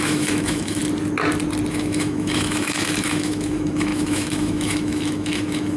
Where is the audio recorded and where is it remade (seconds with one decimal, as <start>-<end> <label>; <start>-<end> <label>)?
0.0-0.8 remade; 0.8-1.7 recorded; 1.7-5.8 remade